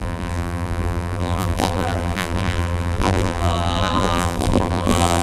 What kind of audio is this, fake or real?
fake